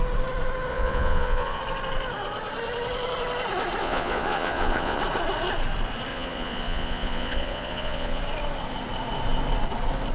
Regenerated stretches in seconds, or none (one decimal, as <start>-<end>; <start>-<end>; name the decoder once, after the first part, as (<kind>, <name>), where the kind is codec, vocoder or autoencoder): 0.7-1.6 (vocoder, Vocos); 3.8-5.0; 6.1-8.2